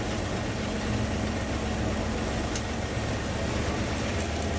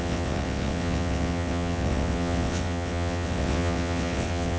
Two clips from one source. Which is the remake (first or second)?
second